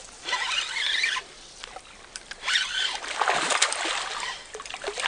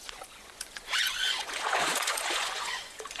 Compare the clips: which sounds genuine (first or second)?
first